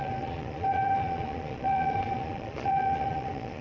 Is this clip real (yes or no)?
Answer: no